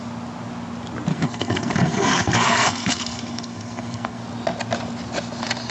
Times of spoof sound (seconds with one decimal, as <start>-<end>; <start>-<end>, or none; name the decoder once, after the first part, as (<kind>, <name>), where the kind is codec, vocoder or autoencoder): 1.1-4.2 (codec, SNAC)